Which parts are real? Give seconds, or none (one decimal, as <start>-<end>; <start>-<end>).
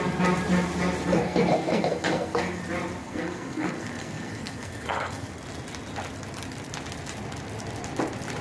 0.0-1.1; 2.6-3.0; 5.3-8.4